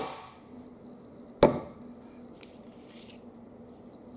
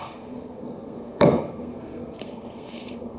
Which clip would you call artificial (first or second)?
second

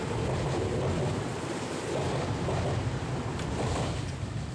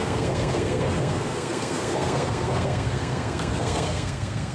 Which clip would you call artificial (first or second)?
second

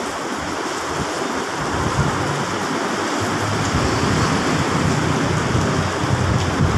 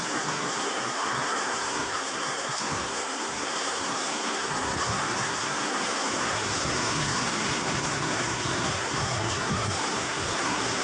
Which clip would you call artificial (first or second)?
second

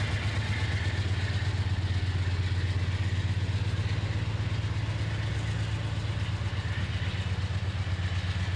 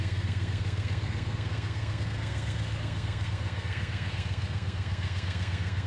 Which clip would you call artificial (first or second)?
second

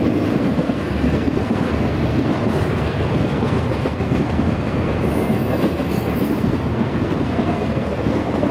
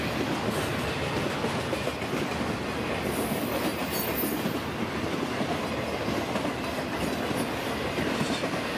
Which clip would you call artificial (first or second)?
first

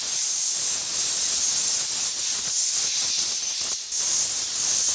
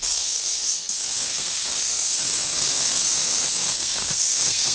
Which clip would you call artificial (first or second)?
second